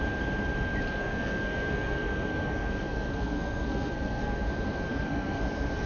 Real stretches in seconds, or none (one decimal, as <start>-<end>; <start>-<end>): 0.0-1.0; 4.5-4.9; 5.4-5.9